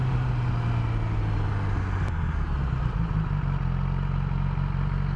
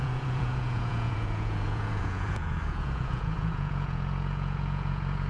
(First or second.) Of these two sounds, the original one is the first